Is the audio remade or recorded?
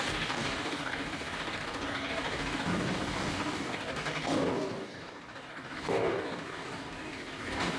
remade